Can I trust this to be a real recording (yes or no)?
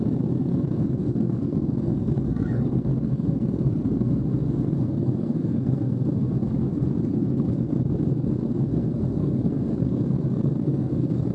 no